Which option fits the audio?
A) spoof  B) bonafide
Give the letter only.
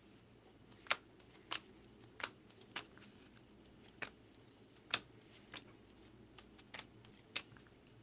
B